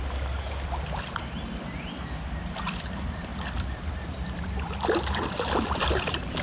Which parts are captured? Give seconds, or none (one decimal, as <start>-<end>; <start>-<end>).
0.0-6.4